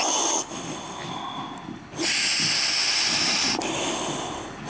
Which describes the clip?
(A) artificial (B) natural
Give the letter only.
B